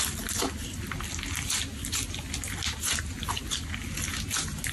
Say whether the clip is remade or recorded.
recorded